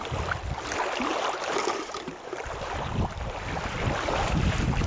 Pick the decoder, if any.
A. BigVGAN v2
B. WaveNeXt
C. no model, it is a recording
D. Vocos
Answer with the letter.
C